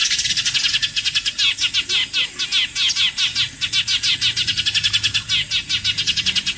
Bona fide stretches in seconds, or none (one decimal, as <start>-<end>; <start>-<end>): 0.0-6.6